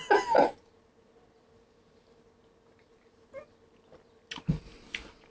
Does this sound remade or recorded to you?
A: recorded